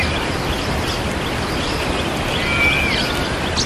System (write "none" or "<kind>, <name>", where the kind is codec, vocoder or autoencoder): none